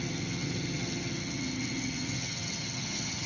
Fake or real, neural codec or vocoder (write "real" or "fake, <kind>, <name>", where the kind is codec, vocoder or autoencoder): fake, vocoder, HiFi-GAN